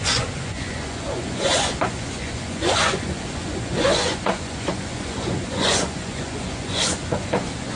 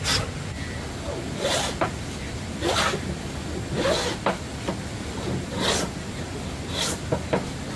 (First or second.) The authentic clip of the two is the second